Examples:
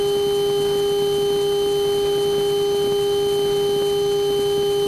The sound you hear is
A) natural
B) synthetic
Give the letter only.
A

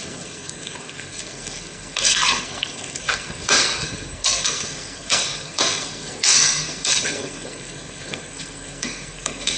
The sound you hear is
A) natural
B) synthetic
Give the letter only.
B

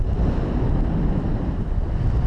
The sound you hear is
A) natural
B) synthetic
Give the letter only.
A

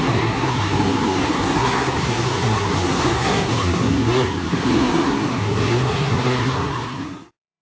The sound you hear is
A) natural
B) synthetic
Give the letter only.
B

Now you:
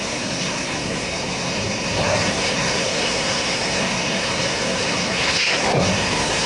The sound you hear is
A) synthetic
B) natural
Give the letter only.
A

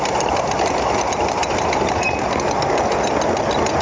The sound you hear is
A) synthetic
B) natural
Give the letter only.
B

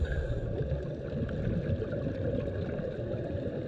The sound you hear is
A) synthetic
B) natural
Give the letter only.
B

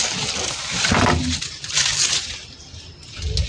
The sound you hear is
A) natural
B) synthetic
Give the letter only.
A